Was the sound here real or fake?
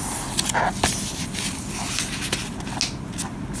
real